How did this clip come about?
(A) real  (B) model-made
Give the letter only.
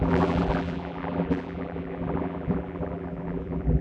B